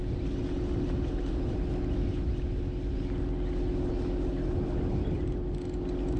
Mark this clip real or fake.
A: real